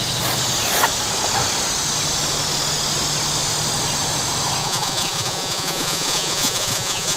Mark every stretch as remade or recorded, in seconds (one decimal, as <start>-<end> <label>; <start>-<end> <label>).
0.0-4.6 recorded; 4.6-7.2 remade